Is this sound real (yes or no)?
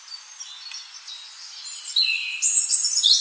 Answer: yes